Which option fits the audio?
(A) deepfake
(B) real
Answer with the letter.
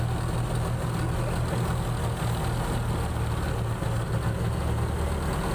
B